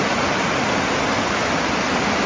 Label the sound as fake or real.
real